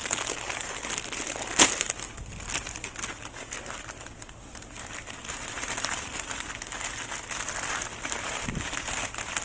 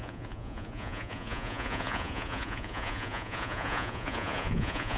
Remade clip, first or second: second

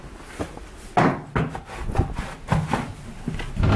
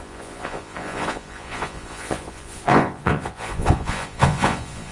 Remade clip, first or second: second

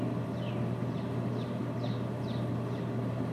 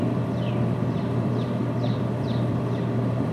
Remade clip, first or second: second